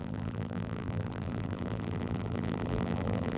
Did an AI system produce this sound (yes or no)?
yes